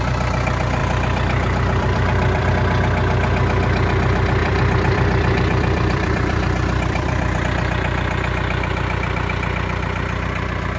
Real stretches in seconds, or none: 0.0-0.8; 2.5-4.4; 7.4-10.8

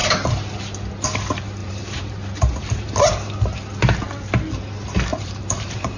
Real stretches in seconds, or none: 0.0-1.6; 3.5-5.1

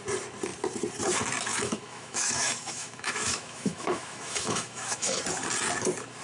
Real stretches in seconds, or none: 0.0-1.5; 5.2-6.2

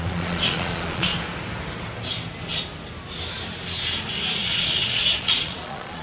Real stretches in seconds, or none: 1.1-4.4